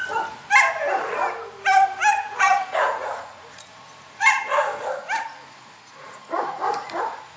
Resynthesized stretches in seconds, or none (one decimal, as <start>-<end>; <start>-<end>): 2.1-4.7; 5.5-7.4